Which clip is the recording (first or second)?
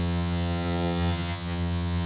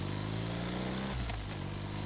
second